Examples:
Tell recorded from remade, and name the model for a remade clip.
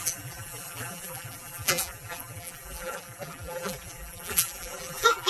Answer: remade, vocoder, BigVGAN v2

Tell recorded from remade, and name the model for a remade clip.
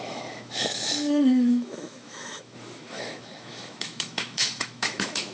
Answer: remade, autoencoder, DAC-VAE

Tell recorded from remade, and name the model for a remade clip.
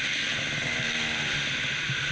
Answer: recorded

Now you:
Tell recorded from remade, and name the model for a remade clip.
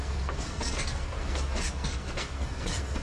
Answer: remade, codec, SNAC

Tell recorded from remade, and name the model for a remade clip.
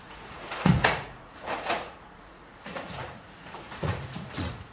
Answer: remade, vocoder, Vocos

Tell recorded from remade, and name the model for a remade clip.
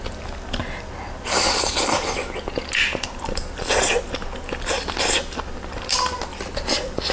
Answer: recorded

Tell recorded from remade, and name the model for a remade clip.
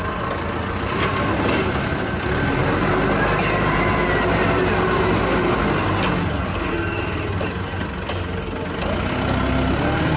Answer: recorded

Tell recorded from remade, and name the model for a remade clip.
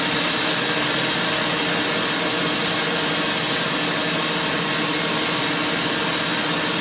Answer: recorded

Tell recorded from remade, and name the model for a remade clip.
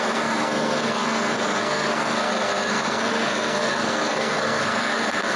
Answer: remade, codec, SNAC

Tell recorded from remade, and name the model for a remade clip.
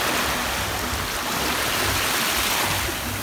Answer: recorded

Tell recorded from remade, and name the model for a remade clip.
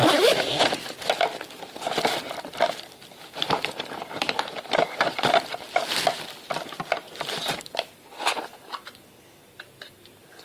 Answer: remade, vocoder, BigVGAN v2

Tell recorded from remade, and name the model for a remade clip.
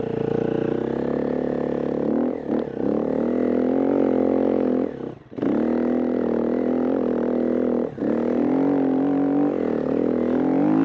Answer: recorded